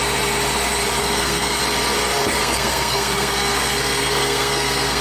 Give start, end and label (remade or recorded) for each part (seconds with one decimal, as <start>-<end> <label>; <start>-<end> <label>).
0.0-1.0 recorded; 1.0-1.6 remade; 1.6-2.4 recorded; 2.4-5.0 remade